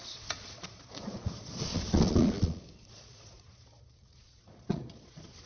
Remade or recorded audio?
remade